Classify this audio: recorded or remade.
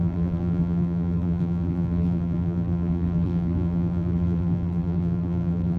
remade